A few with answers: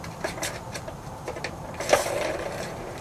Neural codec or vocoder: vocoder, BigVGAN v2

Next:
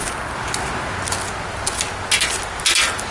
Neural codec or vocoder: none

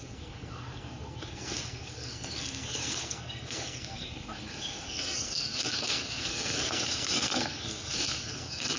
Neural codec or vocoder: codec, SNAC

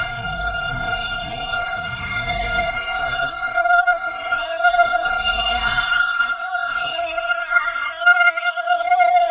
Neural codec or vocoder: codec, SNAC